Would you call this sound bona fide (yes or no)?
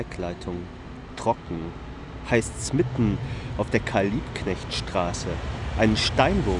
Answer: yes